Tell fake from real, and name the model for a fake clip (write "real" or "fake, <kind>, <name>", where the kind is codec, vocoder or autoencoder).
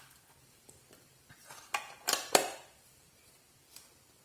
fake, vocoder, BigVGAN v2